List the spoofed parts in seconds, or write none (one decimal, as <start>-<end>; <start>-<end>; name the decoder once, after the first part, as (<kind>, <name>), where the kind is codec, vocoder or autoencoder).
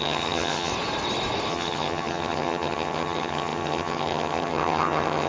0.0-0.7 (vocoder, HiFi-GAN); 1.5-5.3